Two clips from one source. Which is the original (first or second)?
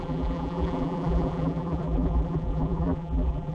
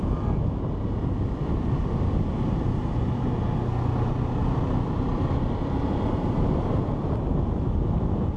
second